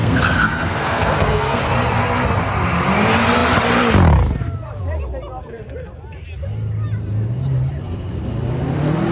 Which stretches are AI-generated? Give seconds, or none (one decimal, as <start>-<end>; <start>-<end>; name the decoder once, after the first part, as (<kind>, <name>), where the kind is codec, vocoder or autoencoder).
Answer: 0.0-1.6 (codec, SNAC)